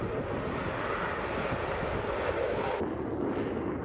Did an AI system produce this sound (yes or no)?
no